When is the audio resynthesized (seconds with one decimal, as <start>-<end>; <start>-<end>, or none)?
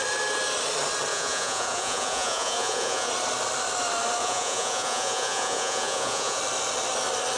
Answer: 1.1-3.1; 4.2-6.4